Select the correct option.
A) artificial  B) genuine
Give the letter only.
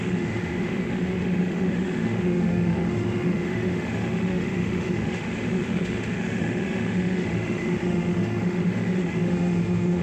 A